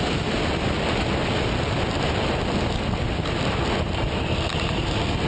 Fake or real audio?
real